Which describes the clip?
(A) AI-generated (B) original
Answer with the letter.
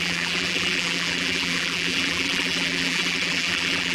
A